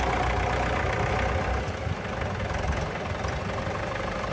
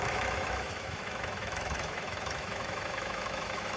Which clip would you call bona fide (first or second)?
first